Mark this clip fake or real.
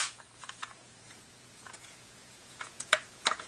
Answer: fake